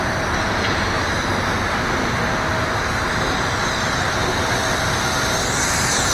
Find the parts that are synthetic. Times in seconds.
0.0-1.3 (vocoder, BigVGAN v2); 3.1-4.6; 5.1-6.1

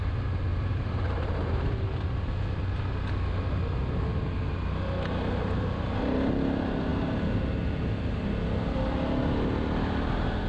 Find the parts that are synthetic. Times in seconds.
0.5-1.9 (vocoder, BigVGAN v2)